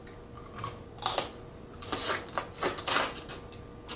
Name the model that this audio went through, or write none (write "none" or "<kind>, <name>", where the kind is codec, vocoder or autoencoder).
none